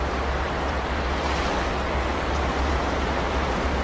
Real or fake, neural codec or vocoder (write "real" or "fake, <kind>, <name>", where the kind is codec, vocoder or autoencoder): fake, vocoder, BigVGAN v2